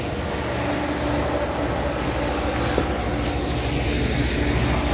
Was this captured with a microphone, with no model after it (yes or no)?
yes